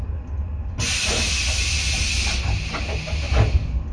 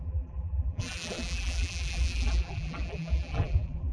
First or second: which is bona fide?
first